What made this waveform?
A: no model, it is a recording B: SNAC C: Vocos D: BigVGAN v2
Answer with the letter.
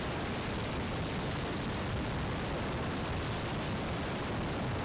A